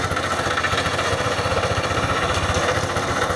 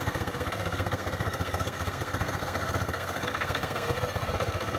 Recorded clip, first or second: first